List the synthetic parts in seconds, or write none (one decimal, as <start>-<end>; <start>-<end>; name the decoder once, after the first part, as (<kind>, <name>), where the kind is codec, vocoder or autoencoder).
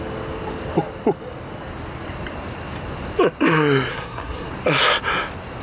3.9-4.5 (codec, SNAC)